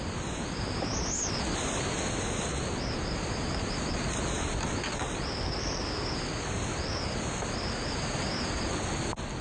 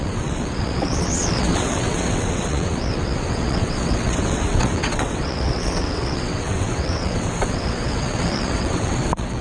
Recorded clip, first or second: first